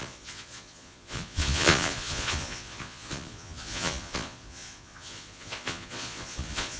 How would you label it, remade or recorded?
remade